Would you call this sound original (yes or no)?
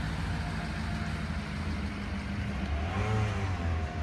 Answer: yes